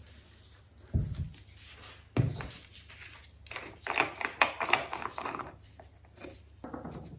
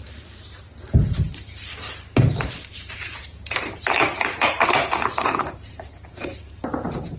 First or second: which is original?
first